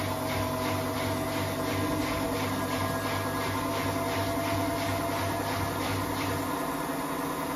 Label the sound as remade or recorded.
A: recorded